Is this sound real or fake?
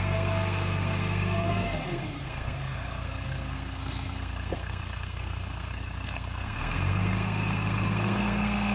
fake